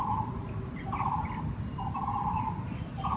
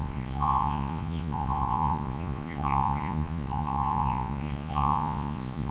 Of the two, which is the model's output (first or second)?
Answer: second